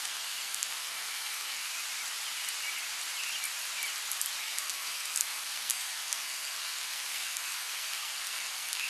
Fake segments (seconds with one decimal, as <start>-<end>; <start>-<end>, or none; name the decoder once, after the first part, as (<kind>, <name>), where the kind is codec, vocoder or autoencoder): 0.0-1.7 (codec, SNAC); 4.4-8.9